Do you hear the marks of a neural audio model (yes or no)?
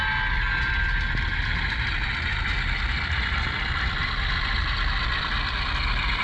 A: no